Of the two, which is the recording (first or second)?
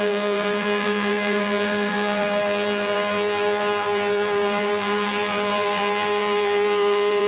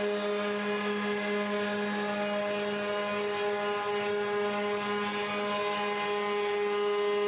second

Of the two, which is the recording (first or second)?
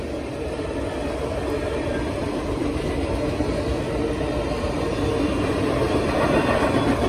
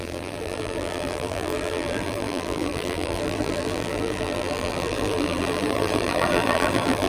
first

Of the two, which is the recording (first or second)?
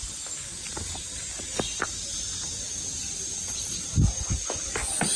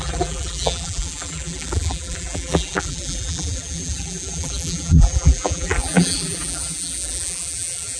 first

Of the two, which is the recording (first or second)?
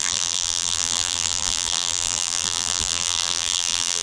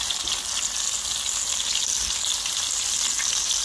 second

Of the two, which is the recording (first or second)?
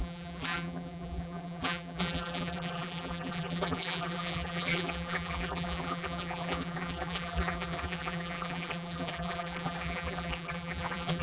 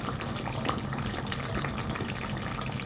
second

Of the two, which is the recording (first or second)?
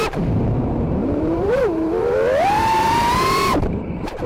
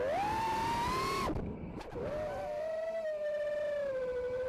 second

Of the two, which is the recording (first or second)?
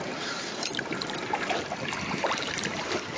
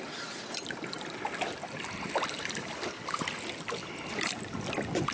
second